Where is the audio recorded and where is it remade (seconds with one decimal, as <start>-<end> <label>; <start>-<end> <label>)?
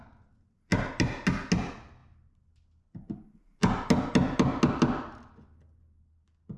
0.0-6.6 recorded